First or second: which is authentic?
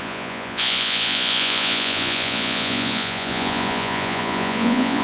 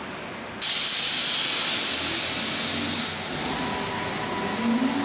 second